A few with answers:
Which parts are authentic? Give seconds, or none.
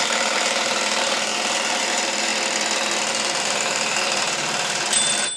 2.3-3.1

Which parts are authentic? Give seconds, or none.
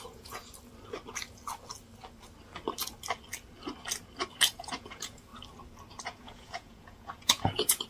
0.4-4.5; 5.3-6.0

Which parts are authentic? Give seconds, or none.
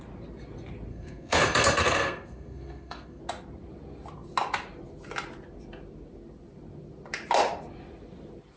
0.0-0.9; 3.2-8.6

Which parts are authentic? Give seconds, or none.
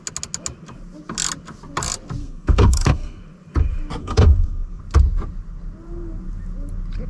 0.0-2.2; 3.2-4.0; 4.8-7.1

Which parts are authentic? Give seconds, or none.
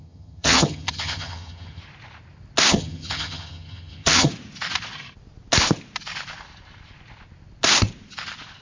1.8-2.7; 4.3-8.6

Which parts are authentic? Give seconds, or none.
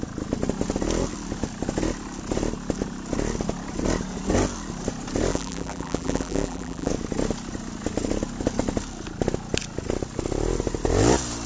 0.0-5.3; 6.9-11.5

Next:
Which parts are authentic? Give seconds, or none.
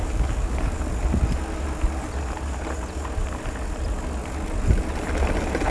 0.8-5.7